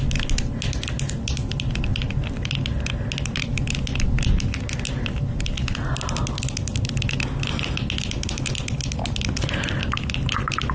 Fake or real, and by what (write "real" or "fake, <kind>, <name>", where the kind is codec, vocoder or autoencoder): real